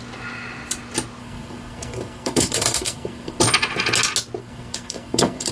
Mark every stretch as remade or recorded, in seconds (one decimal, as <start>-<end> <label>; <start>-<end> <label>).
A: 0.0-1.2 recorded; 1.2-3.4 remade; 3.4-4.4 recorded; 4.4-5.5 remade